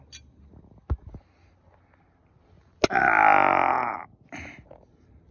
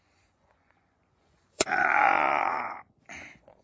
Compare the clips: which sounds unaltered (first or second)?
first